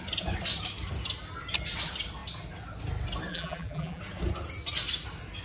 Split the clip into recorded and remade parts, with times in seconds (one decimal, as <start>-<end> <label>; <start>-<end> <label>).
0.0-3.3 recorded; 3.3-4.0 remade; 4.0-5.4 recorded